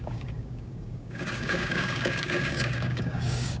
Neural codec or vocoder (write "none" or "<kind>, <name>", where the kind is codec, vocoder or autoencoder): codec, DAC